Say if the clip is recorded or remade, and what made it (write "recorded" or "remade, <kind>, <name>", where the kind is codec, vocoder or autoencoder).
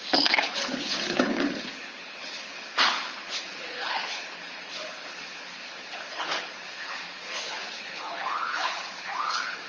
remade, codec, HILCodec